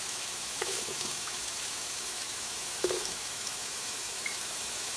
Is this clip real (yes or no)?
no